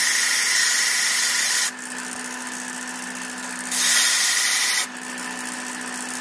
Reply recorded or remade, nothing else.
recorded